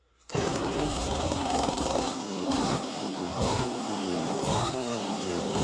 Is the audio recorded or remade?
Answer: remade